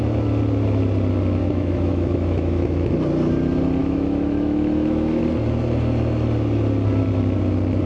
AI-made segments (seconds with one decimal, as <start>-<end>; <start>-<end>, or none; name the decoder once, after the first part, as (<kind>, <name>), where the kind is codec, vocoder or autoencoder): 1.4-2.9 (autoencoder, DAC-VAE); 3.8-5.2